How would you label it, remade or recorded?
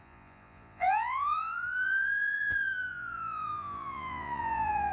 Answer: remade